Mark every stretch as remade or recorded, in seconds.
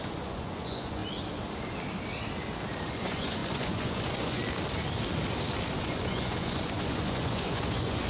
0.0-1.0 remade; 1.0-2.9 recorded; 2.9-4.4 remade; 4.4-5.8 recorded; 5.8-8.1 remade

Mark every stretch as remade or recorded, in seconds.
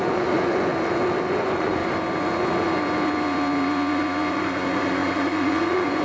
0.0-0.7 remade; 0.7-1.3 recorded; 1.3-1.8 remade; 1.8-4.3 recorded; 4.3-6.0 remade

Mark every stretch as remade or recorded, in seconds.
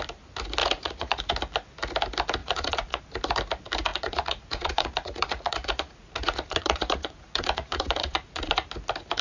0.0-0.6 recorded; 0.6-1.2 remade; 1.2-2.4 recorded; 2.4-3.0 remade; 3.0-3.9 recorded; 3.9-8.7 remade; 8.7-9.2 recorded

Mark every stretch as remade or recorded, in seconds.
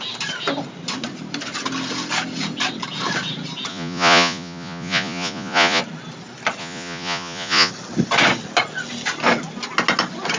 0.0-3.7 recorded; 3.7-5.8 remade; 5.8-6.6 recorded; 6.6-7.7 remade; 7.7-10.4 recorded